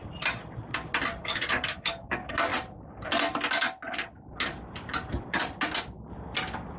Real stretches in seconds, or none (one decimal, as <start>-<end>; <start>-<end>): 0.0-1.2; 2.5-6.8